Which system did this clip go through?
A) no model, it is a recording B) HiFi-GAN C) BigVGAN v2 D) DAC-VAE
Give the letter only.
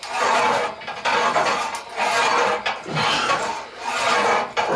A